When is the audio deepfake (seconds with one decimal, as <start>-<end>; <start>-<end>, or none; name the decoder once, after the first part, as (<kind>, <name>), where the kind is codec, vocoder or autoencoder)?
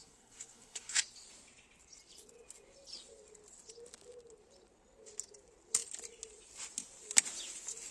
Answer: 0.0-1.0 (codec, SNAC)